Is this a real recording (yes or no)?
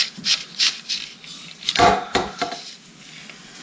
yes